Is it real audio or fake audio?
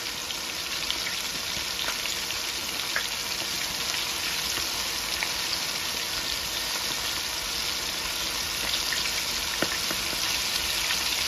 real